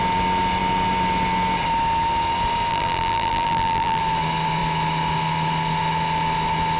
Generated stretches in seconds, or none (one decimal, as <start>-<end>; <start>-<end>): 2.7-4.0